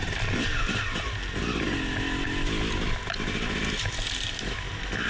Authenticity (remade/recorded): recorded